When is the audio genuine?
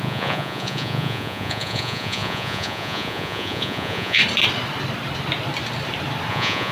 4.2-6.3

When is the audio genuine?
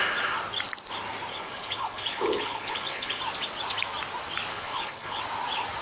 0.0-1.3; 3.2-4.5; 5.2-5.8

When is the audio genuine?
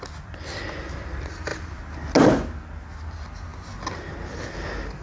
0.0-5.0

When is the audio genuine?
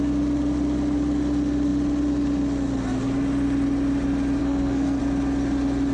0.0-4.4; 5.0-5.9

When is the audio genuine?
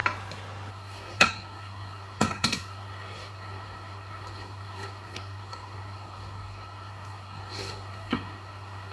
0.0-0.7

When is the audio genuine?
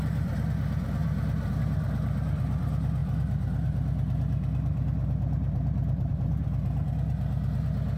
0.0-8.0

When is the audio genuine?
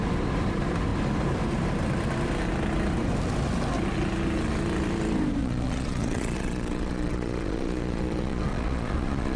0.0-5.4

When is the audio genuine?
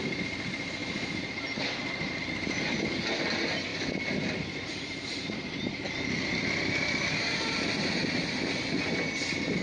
0.0-0.8; 2.8-3.7; 8.6-9.6